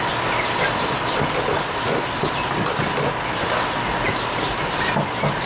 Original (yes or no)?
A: yes